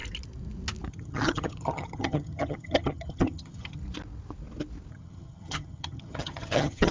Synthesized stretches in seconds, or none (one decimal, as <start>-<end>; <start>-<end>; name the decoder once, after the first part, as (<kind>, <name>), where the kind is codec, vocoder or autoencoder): 0.9-3.8 (vocoder, HiFi-GAN); 4.9-6.9